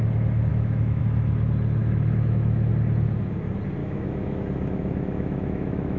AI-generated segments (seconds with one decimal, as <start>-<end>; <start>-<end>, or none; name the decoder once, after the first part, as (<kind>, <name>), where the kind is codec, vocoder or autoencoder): 0.5-1.0 (autoencoder, DAC-VAE); 1.8-2.7; 3.8-6.0